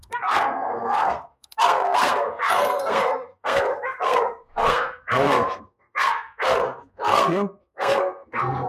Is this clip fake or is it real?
fake